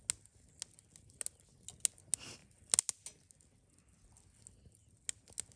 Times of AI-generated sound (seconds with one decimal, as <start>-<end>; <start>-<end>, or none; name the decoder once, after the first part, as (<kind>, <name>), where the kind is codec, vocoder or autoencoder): none